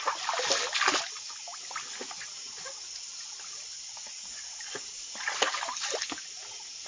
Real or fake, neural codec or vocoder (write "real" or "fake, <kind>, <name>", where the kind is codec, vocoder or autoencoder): real